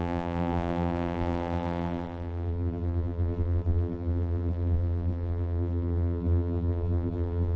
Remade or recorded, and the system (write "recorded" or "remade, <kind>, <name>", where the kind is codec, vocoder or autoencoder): remade, vocoder, BigVGAN v2